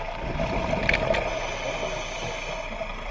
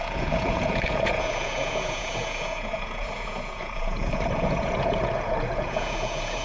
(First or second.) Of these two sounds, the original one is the first